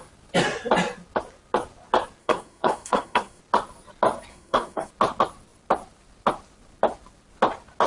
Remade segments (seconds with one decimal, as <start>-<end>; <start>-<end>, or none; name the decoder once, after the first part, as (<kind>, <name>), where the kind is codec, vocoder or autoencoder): 2.2-3.4 (codec, SNAC); 4.3-4.9